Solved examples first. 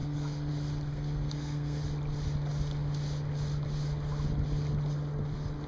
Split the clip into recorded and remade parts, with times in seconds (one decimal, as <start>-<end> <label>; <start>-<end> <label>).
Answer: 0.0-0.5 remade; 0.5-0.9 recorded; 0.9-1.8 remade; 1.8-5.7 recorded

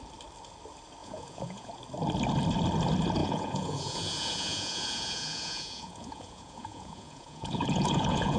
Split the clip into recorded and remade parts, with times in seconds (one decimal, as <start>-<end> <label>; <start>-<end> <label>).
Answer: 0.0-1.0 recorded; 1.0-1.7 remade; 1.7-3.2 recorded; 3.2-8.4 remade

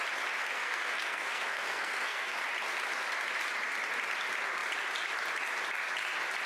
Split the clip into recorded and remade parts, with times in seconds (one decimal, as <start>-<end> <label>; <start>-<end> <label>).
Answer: 0.0-0.4 recorded; 0.4-2.4 remade; 2.4-6.5 recorded

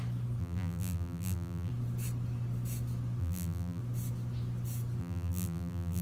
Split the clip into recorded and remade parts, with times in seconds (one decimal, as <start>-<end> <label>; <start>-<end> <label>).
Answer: 0.0-0.4 recorded; 0.4-1.7 remade; 1.7-3.2 recorded; 3.2-3.8 remade; 3.8-5.0 recorded; 5.0-6.0 remade